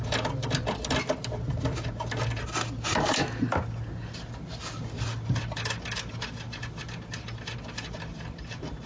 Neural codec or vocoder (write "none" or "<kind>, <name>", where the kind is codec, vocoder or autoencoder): none